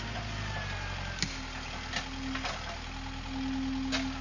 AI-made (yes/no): no